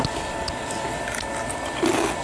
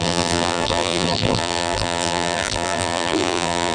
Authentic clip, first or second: first